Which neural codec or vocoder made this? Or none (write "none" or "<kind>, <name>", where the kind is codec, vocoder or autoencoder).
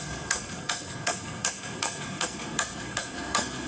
codec, SNAC